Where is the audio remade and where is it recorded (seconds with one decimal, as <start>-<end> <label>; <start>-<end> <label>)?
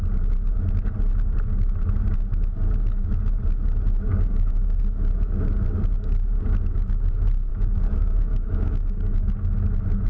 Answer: 0.0-4.1 recorded; 4.1-4.8 remade; 4.8-7.5 recorded; 7.5-9.3 remade; 9.3-10.1 recorded